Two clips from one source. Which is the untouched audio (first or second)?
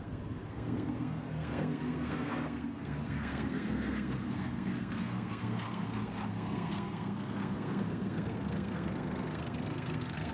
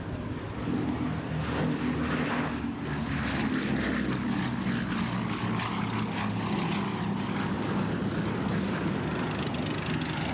second